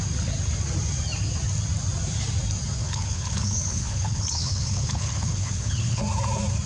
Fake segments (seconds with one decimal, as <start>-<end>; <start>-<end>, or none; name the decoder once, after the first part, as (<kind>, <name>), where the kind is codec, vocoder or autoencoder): 2.8-6.0 (codec, HILCodec)